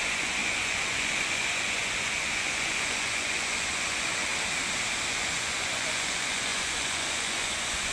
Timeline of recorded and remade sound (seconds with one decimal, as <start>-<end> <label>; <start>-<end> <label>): 0.0-4.3 remade; 4.3-5.1 recorded; 5.1-7.9 remade